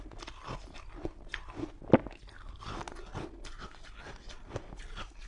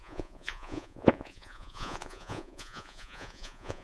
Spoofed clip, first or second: second